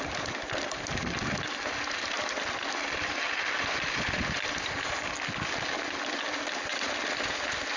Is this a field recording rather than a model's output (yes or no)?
yes